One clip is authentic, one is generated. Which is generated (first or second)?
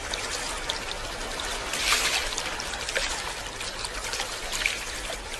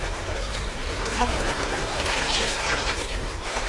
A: second